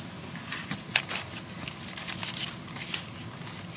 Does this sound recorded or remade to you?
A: recorded